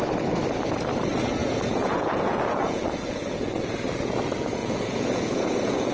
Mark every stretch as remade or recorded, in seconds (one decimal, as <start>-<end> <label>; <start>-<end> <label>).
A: 0.0-1.4 recorded; 1.4-3.7 remade; 3.7-4.6 recorded; 4.6-5.9 remade